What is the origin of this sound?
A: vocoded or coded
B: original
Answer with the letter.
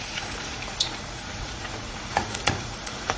A